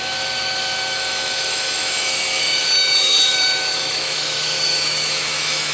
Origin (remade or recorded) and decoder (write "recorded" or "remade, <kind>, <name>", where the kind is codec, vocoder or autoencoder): remade, autoencoder, DAC-VAE